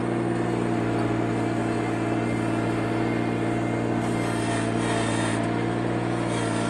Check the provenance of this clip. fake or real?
real